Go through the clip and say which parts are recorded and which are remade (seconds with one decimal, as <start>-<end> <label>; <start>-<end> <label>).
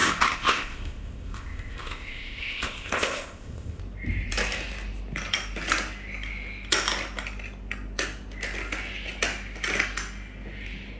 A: 0.0-3.8 remade; 3.8-11.0 recorded